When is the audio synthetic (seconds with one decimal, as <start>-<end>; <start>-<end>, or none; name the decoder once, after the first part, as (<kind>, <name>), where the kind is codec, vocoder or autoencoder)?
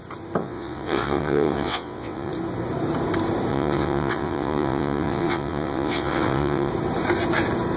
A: 0.4-2.3 (vocoder, WaveNeXt); 3.5-6.7